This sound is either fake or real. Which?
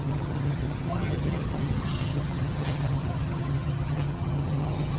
fake